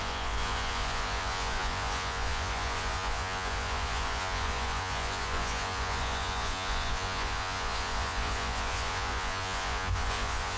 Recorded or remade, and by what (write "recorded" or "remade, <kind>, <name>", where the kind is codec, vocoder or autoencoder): remade, vocoder, Vocos